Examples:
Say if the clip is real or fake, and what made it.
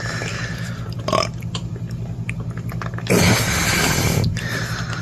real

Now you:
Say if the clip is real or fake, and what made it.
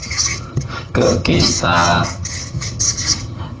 fake, vocoder, HiFi-GAN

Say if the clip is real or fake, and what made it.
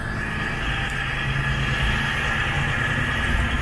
real